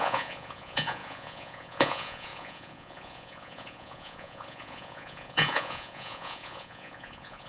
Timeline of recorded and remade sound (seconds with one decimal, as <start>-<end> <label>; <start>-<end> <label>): 0.0-7.5 remade